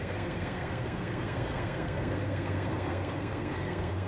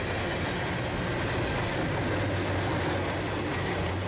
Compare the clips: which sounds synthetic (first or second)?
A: first